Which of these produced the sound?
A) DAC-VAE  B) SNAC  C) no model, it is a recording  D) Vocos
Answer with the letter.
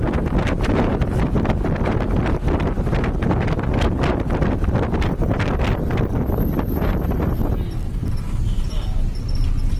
C